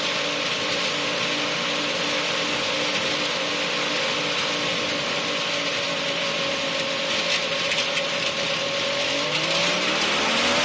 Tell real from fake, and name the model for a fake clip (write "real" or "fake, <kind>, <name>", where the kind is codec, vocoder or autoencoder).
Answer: real